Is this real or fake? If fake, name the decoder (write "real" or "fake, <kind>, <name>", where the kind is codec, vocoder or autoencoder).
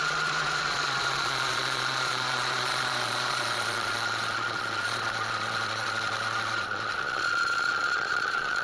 fake, vocoder, Vocos